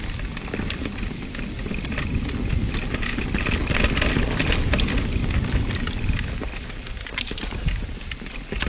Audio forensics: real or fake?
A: real